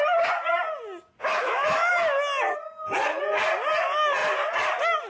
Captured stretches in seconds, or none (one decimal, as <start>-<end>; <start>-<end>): 0.0-1.2; 1.9-5.1